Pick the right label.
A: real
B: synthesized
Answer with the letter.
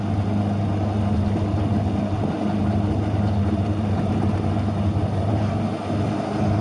A